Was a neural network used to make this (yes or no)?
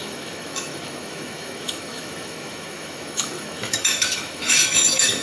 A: yes